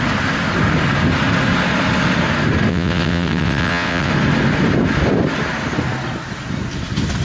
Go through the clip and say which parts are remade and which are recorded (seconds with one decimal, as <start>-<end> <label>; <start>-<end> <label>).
0.0-2.7 recorded; 2.7-4.1 remade; 4.1-7.2 recorded

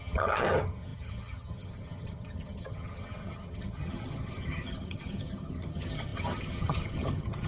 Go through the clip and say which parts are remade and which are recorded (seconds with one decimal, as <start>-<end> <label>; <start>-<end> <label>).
0.0-7.5 remade

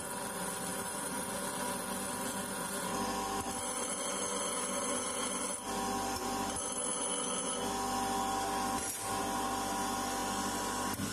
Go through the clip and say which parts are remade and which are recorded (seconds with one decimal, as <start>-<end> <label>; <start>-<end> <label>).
0.0-0.7 recorded; 0.7-1.3 remade; 1.3-11.1 recorded

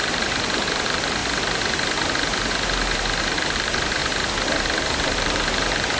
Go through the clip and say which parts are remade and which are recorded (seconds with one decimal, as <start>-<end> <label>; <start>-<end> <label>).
0.0-1.2 remade; 1.2-3.2 recorded; 3.2-4.0 remade; 4.0-4.8 recorded; 4.8-6.0 remade

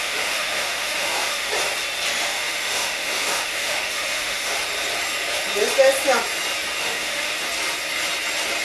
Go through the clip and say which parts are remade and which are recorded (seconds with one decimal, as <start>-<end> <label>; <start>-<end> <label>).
0.0-1.5 remade; 1.5-2.2 recorded; 2.2-4.5 remade; 4.5-6.8 recorded; 6.8-7.3 remade; 7.3-8.6 recorded

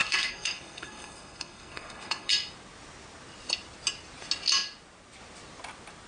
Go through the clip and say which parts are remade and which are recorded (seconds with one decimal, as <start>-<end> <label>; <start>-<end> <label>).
0.0-2.3 remade; 2.3-6.1 recorded

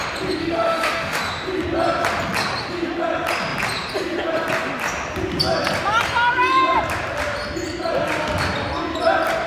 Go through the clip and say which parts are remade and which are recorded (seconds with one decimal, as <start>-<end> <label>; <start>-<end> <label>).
0.0-0.4 recorded; 0.4-1.2 remade; 1.2-9.5 recorded